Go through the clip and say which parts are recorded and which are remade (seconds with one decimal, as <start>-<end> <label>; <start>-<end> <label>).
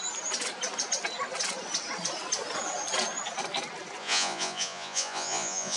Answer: 0.0-4.0 recorded; 4.0-5.8 remade